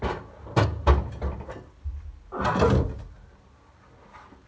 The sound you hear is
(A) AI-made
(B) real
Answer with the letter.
B